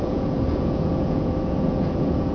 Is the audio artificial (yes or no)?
yes